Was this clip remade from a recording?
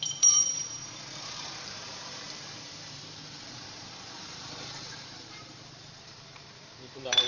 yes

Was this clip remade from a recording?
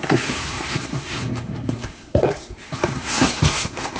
yes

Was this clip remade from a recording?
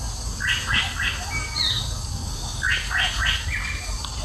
no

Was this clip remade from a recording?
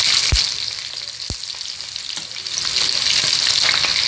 no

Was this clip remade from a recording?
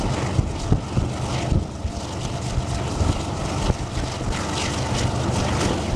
no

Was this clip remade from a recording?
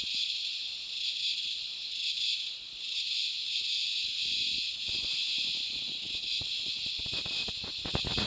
no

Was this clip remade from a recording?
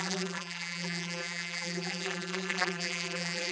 yes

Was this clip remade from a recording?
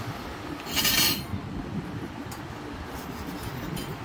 no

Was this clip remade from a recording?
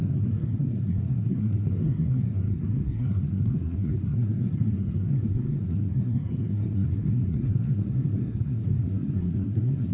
yes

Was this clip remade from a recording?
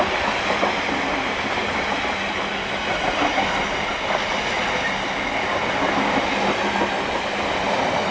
no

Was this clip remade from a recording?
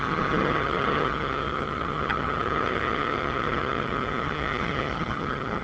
yes